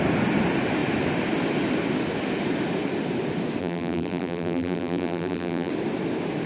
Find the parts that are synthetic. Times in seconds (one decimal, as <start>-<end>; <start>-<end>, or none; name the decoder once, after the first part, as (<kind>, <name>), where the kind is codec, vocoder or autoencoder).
3.6-5.7 (vocoder, BigVGAN v2)